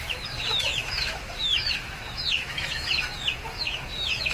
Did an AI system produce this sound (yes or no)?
yes